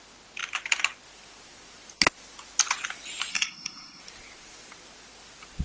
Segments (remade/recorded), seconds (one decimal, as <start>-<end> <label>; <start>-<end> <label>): 0.0-3.3 recorded; 3.3-4.0 remade; 4.0-5.6 recorded